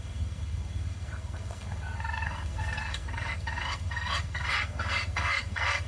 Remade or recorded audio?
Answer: remade